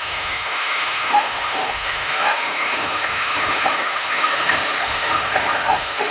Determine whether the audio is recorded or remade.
remade